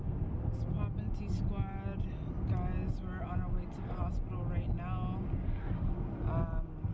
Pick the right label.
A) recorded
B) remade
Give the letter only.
A